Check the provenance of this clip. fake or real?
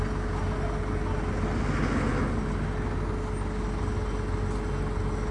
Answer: real